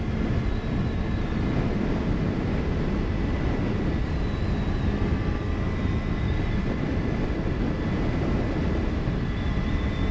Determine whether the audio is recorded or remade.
recorded